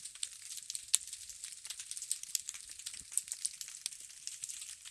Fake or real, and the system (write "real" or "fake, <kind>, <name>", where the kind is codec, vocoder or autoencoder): real